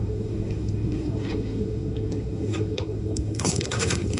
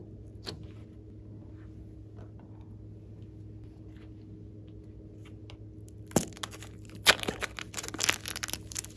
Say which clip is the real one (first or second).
second